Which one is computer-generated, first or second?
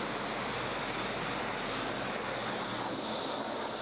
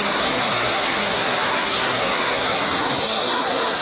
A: second